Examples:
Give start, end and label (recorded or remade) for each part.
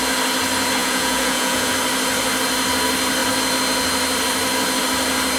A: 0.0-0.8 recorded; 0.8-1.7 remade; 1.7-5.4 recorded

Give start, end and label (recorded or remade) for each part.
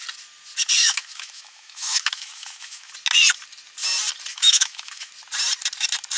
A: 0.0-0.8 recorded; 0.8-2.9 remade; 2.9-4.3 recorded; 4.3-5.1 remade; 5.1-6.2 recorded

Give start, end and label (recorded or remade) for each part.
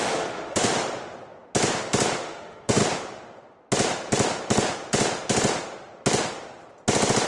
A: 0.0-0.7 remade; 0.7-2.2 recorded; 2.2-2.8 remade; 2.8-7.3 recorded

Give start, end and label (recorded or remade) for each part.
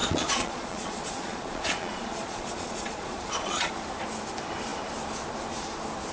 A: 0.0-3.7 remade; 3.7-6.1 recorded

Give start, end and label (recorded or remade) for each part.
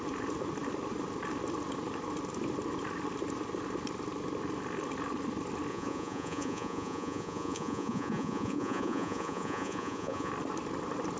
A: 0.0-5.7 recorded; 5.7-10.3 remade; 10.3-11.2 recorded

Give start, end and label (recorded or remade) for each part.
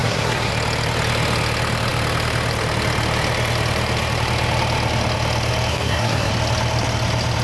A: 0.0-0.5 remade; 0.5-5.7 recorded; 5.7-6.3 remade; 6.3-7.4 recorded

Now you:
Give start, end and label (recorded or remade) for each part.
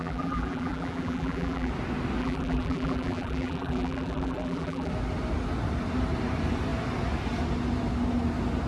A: 0.0-1.7 remade; 1.7-2.2 recorded; 2.2-4.9 remade; 4.9-8.7 recorded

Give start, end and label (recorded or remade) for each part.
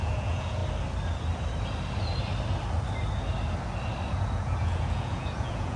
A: 0.0-0.6 remade; 0.6-4.1 recorded; 4.1-5.8 remade